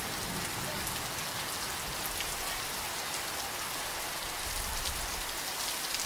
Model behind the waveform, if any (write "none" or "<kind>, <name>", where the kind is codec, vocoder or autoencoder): none